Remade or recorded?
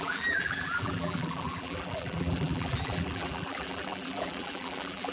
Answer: remade